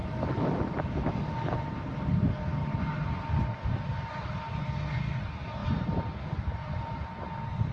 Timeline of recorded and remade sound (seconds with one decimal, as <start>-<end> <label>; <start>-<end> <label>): 0.0-0.6 remade; 0.6-7.7 recorded